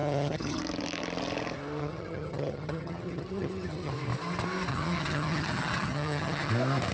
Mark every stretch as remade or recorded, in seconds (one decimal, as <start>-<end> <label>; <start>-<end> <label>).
0.0-0.6 remade; 0.6-1.8 recorded; 1.8-3.9 remade; 3.9-4.7 recorded; 4.7-6.5 remade; 6.5-6.9 recorded